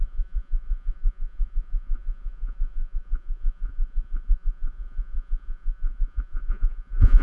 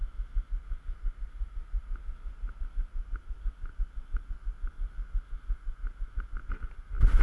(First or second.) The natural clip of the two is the second